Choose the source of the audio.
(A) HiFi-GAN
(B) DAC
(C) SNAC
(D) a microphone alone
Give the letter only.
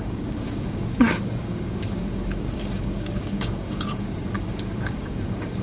B